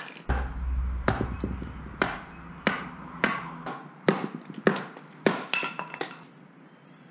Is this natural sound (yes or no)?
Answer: yes